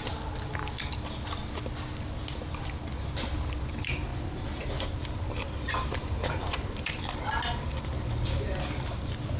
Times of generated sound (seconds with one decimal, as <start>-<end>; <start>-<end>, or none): 4.1-7.0